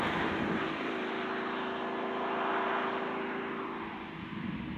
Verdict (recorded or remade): recorded